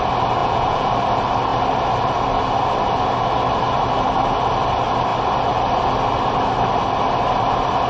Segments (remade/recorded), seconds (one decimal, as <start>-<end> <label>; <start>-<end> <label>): 0.0-0.4 recorded; 0.4-0.9 remade; 0.9-7.9 recorded